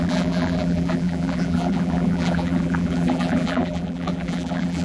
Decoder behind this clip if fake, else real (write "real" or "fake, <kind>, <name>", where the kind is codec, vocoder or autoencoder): fake, vocoder, BigVGAN v2